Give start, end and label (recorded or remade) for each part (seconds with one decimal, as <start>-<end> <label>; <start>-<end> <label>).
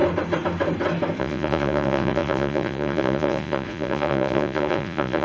0.0-1.2 recorded; 1.2-5.2 remade